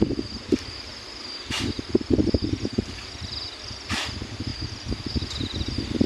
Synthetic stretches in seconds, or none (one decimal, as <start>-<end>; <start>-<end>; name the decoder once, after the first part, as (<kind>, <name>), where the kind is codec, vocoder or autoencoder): 4.5-5.2 (vocoder, BigVGAN v2)